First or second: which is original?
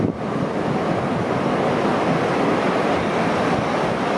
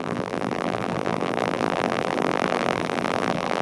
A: first